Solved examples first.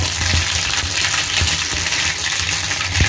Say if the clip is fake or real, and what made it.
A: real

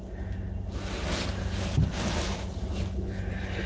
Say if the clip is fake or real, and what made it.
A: real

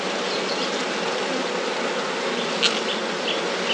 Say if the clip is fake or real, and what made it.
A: real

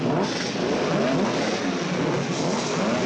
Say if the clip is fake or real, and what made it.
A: real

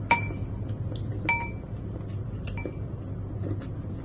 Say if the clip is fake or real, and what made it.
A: real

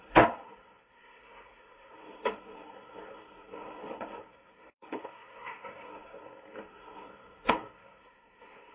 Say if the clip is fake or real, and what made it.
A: fake, codec, SNAC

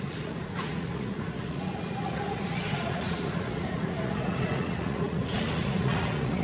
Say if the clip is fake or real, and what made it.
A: fake, vocoder, Vocos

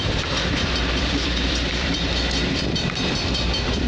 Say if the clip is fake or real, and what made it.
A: fake, vocoder, BigVGAN v2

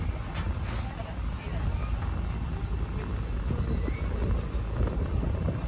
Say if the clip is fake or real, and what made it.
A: real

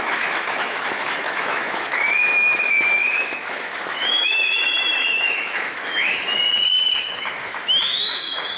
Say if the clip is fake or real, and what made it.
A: fake, autoencoder, DAC-VAE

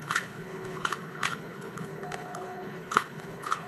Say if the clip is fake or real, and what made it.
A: fake, codec, HILCodec